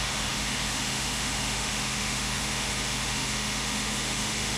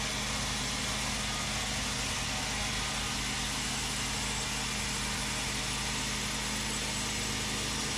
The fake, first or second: first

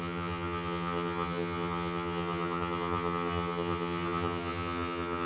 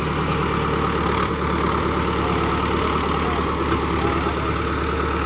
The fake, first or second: first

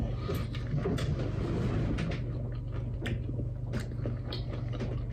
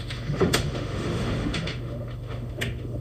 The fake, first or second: second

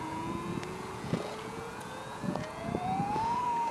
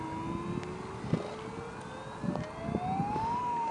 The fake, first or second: first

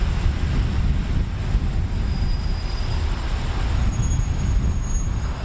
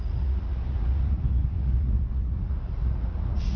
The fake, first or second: second